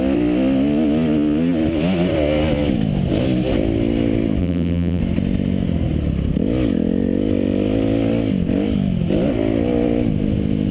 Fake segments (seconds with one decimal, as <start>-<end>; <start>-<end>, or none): 4.4-5.0